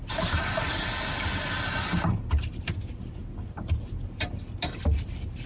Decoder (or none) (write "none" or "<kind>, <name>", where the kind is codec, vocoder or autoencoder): none